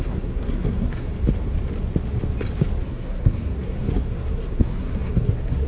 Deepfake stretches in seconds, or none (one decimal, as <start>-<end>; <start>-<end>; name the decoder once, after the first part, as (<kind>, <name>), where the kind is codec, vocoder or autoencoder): 0.0-1.1 (codec, SNAC); 2.8-5.7